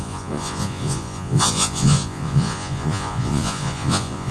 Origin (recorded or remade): remade